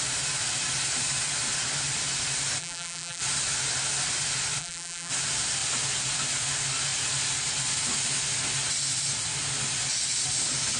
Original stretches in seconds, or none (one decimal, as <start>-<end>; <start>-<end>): 0.0-2.6; 3.2-4.6; 5.1-10.8